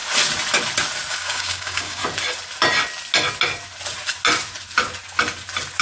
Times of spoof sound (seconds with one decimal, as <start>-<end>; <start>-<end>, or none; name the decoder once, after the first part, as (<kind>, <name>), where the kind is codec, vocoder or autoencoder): 1.1-2.0 (codec, DAC)

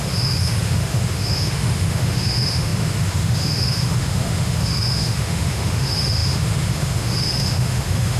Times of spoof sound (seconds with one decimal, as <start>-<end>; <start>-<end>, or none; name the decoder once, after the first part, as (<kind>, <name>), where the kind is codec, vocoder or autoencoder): 0.0-8.2 (autoencoder, DAC-VAE)

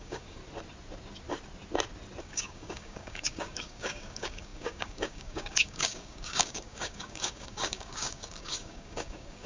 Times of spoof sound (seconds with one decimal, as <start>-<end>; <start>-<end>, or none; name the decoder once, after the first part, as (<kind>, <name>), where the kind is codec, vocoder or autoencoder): 0.0-0.4 (codec, DAC); 2.2-9.5

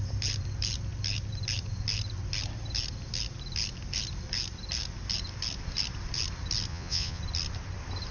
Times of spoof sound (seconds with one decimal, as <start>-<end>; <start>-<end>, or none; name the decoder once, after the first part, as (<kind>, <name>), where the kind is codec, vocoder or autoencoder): 6.7-7.2 (vocoder, Vocos)